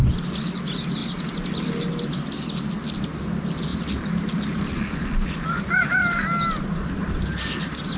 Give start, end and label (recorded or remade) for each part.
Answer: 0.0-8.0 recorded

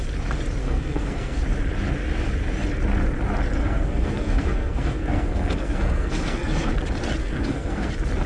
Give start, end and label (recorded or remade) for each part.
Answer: 0.0-0.6 recorded; 0.6-1.4 remade; 1.4-3.6 recorded; 3.6-6.7 remade; 6.7-7.2 recorded; 7.2-7.9 remade; 7.9-8.3 recorded

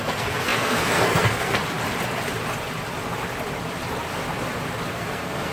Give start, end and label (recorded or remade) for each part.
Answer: 0.0-1.6 remade; 1.6-4.9 recorded; 4.9-5.5 remade

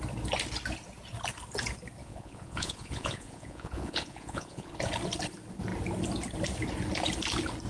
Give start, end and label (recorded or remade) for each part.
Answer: 0.0-2.0 recorded; 2.0-4.7 remade; 4.7-7.7 recorded

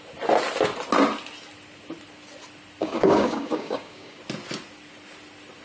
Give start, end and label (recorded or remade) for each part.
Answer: 0.0-2.8 recorded; 2.8-4.2 remade; 4.2-5.6 recorded

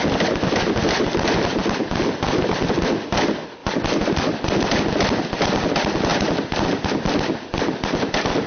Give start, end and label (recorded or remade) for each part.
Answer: 0.0-8.5 recorded

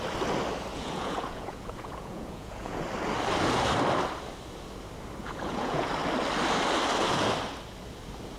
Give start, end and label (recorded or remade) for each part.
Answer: 0.0-0.7 recorded; 0.7-2.8 remade; 2.8-5.2 recorded; 5.2-5.9 remade; 5.9-8.4 recorded

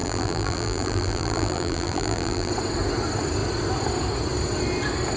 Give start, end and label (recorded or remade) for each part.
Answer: 0.0-2.5 remade; 2.5-5.2 recorded